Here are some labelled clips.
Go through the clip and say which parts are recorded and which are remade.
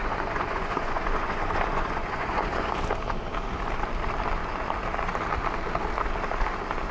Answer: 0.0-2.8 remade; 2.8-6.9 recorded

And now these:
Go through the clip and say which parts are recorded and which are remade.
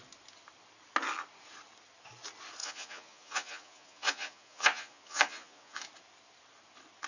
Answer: 0.0-2.6 recorded; 2.6-5.8 remade; 5.8-7.1 recorded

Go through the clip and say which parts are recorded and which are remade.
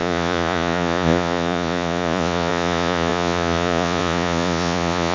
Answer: 0.0-5.1 remade